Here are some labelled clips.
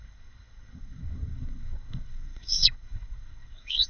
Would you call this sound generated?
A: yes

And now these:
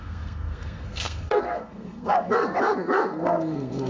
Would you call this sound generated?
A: yes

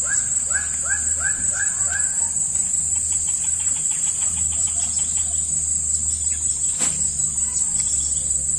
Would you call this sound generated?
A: no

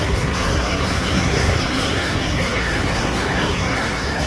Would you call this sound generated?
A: yes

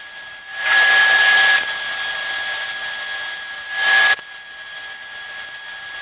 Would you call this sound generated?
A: no